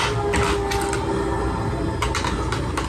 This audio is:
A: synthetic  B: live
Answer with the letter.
B